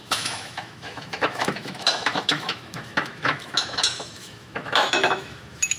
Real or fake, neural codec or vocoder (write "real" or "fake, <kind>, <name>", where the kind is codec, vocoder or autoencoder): fake, autoencoder, DAC-VAE